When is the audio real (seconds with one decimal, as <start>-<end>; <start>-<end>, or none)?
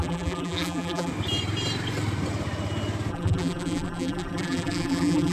1.1-3.1